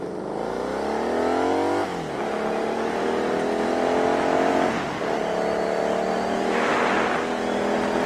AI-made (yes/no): no